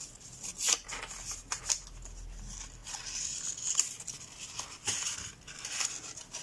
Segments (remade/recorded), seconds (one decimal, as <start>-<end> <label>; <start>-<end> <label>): 0.0-6.4 recorded